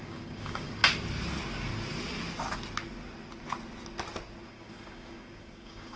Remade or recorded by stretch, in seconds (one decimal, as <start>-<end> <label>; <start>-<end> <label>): 0.0-0.8 remade; 0.8-4.4 recorded; 4.4-6.0 remade